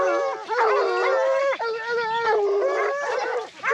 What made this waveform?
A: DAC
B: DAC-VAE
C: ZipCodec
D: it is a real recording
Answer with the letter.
D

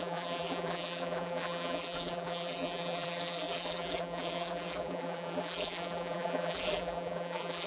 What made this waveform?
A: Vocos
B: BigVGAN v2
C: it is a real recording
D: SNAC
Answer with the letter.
B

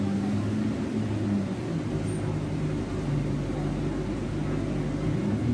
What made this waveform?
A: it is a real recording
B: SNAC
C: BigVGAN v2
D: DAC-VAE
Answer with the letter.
A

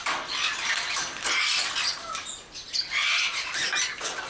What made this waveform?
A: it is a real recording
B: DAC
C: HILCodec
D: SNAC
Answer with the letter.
A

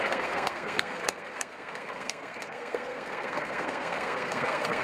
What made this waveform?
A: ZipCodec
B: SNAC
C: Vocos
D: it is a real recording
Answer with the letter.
B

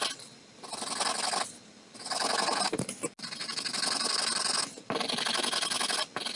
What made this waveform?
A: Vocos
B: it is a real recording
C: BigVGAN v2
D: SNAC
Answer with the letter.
B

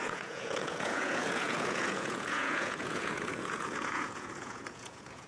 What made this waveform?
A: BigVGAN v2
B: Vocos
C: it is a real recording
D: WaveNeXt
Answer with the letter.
B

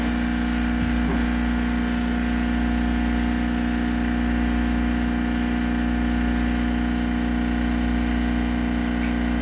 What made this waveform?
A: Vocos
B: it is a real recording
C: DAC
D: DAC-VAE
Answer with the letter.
B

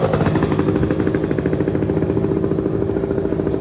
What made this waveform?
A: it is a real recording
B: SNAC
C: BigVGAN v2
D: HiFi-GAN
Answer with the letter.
A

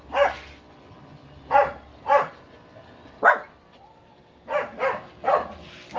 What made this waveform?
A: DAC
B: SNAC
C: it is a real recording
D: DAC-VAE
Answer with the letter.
C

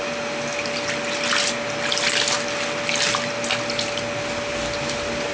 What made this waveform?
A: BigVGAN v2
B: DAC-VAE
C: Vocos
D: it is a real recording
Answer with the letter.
D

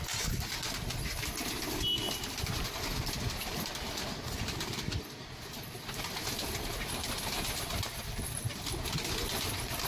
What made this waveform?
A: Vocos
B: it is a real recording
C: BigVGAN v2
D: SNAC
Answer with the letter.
C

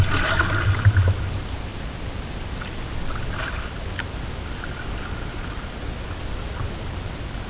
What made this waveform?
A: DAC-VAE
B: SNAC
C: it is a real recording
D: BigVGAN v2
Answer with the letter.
C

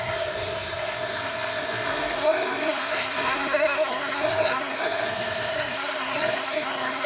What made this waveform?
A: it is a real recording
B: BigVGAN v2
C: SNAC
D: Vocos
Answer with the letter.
C